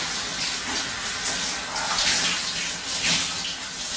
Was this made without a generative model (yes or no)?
yes